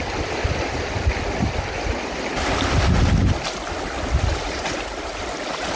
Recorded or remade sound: recorded